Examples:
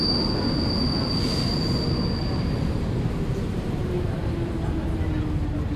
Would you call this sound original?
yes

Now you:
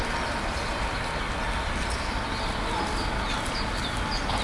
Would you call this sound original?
yes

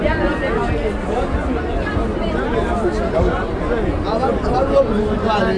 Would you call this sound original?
yes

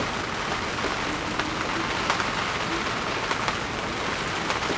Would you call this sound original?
yes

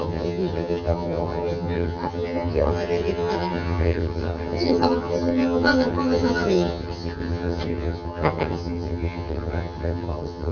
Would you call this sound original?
no